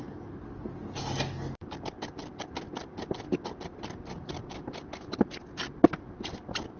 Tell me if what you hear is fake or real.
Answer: real